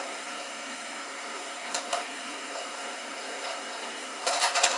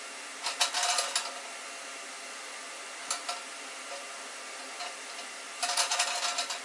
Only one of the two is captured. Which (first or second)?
second